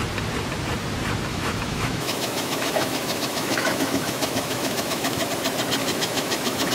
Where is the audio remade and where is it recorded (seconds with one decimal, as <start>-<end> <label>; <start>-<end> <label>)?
0.0-1.3 recorded; 1.3-5.3 remade; 5.3-5.8 recorded; 5.8-6.7 remade